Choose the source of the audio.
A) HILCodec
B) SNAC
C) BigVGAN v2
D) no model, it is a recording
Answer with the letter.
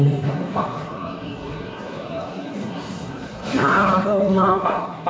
B